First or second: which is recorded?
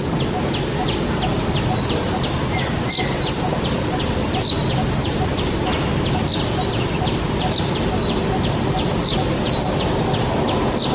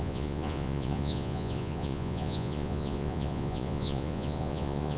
first